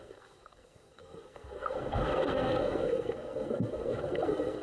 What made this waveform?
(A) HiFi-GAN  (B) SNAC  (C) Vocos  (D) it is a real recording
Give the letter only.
B